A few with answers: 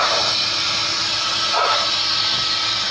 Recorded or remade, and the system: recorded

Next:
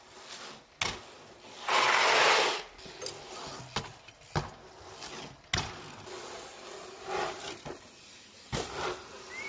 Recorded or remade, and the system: recorded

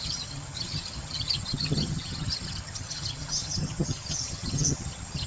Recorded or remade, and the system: remade, vocoder, HiFi-GAN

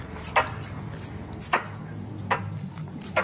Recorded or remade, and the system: recorded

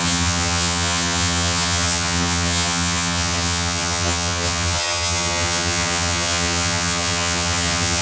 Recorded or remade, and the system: remade, vocoder, HiFi-GAN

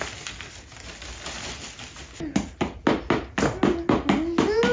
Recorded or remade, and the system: recorded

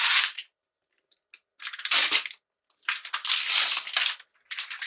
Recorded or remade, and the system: recorded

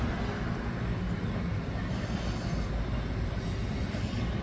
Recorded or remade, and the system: recorded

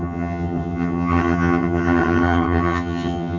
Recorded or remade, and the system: remade, vocoder, HiFi-GAN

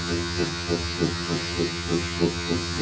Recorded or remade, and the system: remade, vocoder, HiFi-GAN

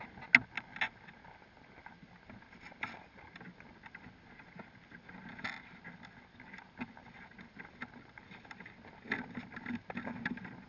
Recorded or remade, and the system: recorded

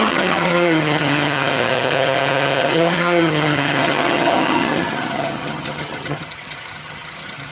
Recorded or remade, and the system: remade, vocoder, HiFi-GAN